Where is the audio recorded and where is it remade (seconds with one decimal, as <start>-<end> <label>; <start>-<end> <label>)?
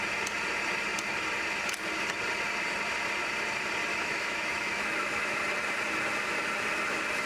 0.0-3.9 recorded; 3.9-5.4 remade; 5.4-7.3 recorded